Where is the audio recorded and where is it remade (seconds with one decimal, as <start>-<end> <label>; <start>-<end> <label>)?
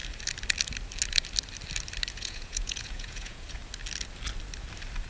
0.0-2.1 recorded; 2.1-3.6 remade; 3.6-5.1 recorded